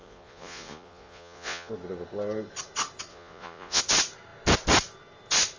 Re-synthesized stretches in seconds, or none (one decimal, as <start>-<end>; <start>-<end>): 0.0-1.7; 3.1-3.8